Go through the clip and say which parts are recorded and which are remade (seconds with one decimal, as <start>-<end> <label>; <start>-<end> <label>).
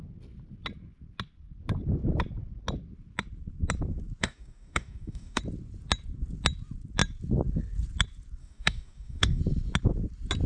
0.0-4.2 recorded; 4.2-5.4 remade; 5.4-8.4 recorded; 8.4-9.4 remade; 9.4-10.5 recorded